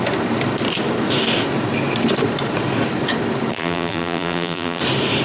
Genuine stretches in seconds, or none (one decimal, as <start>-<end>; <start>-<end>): 0.0-3.5; 4.8-5.2